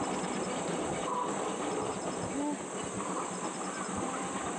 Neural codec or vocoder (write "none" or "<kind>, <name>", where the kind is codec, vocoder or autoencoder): none